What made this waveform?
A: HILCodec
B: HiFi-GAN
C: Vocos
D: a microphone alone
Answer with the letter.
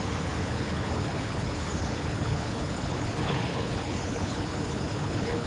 A